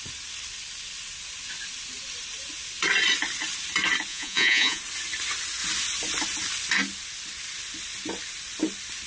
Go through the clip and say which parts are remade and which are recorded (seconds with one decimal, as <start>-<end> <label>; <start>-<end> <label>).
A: 0.0-4.1 recorded; 4.1-4.8 remade; 4.8-9.1 recorded